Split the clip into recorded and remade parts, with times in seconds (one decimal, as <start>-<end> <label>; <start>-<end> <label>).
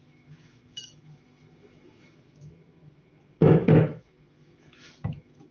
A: 0.0-5.5 remade